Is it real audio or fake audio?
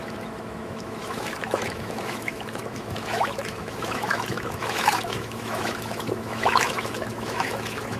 fake